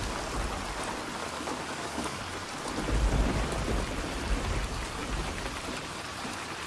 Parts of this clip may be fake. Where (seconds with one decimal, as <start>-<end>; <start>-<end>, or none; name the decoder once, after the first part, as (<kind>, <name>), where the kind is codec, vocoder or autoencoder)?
1.2-2.2 (codec, DAC)